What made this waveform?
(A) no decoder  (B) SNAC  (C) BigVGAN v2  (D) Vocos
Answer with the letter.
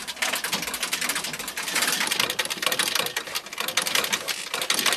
A